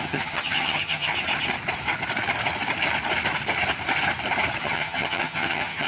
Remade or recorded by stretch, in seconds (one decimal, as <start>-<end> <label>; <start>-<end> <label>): 0.0-1.1 remade; 1.1-4.6 recorded; 4.6-5.9 remade